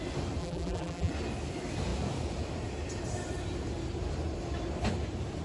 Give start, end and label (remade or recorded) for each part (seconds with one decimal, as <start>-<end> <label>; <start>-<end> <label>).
0.0-0.4 recorded; 0.4-1.1 remade; 1.1-5.4 recorded